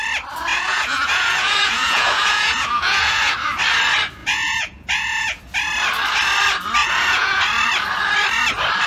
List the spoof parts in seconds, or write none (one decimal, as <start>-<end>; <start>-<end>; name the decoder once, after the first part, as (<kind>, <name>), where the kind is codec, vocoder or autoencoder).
0.5-3.3 (vocoder, Vocos); 4.2-5.4; 6.8-7.4